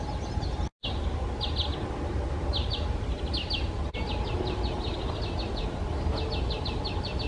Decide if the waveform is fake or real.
real